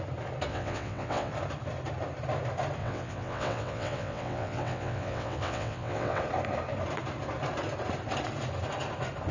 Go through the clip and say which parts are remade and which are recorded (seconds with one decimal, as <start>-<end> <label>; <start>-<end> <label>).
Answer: 0.0-0.5 recorded; 0.5-1.3 remade; 1.3-2.8 recorded; 2.8-6.2 remade; 6.2-9.3 recorded